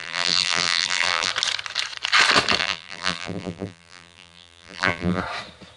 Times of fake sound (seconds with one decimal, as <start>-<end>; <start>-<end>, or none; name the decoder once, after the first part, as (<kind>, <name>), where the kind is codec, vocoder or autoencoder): 0.0-1.3 (vocoder, BigVGAN v2); 2.6-5.2